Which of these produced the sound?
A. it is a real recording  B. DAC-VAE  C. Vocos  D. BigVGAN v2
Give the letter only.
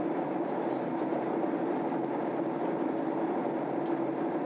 D